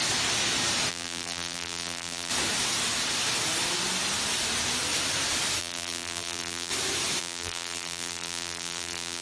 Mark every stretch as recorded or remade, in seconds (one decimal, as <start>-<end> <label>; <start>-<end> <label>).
0.0-0.9 recorded; 0.9-2.3 remade; 2.3-5.6 recorded; 5.6-6.7 remade; 6.7-7.2 recorded; 7.2-9.2 remade